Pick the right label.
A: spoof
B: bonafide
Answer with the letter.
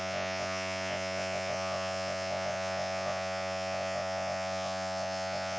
A